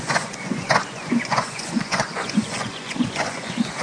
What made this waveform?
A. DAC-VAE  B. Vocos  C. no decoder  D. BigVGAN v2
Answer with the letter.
B